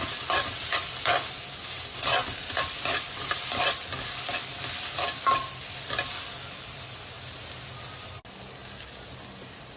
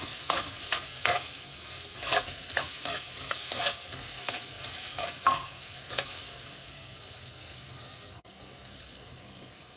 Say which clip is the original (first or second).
first